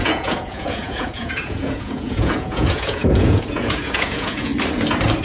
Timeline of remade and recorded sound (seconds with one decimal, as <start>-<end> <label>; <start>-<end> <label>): 0.0-4.5 remade; 4.5-5.2 recorded